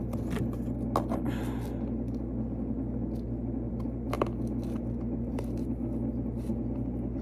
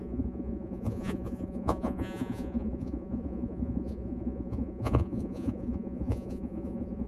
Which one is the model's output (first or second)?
second